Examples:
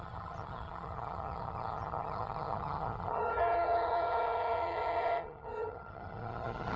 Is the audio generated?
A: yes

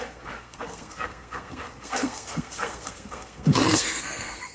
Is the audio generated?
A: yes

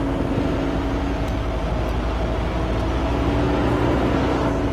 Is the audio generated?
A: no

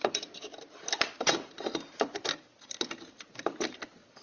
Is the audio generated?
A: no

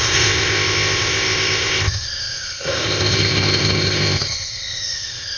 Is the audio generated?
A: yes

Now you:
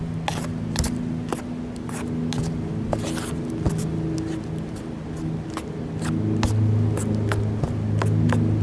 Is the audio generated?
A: no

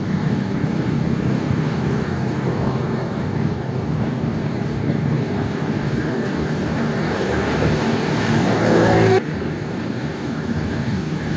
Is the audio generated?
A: yes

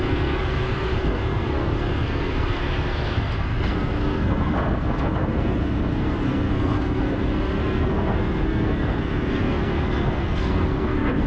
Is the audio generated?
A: yes